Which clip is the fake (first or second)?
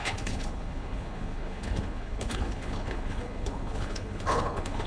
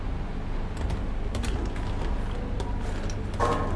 first